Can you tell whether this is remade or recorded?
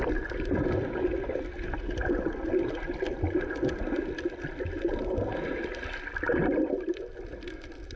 recorded